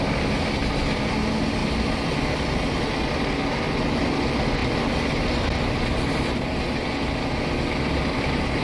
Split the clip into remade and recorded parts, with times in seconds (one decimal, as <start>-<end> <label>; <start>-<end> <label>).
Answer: 0.0-1.6 recorded; 1.6-2.8 remade; 2.8-8.6 recorded